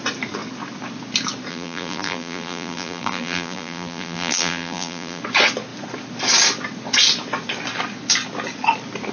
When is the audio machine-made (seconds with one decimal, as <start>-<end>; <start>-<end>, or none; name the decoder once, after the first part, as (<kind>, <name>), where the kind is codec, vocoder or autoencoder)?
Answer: 1.5-5.2 (vocoder, BigVGAN v2)